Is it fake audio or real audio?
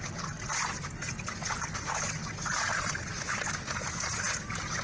real